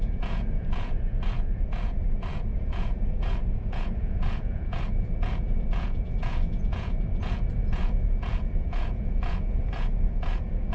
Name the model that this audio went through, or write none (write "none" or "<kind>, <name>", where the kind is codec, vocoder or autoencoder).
vocoder, Vocos